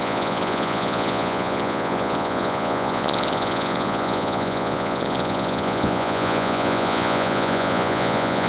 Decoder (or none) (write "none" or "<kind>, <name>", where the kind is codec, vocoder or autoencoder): vocoder, Vocos